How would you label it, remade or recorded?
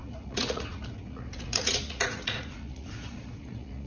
remade